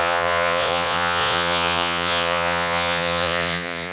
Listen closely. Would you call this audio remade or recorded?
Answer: remade